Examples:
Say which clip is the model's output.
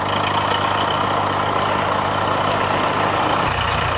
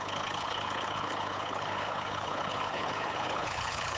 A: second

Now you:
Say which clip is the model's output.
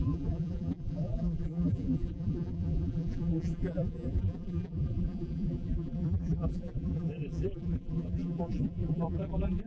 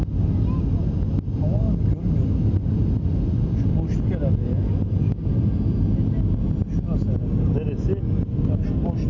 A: first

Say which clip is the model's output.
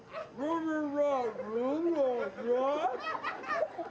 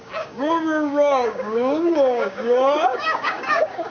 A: second